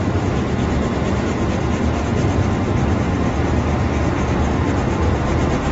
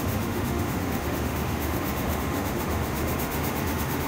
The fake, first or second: second